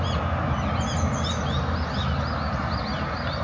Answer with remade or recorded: recorded